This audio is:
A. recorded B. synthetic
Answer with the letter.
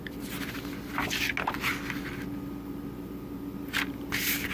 A